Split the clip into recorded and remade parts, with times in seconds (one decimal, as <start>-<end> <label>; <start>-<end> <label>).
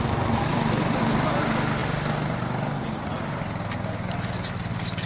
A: 0.0-5.1 recorded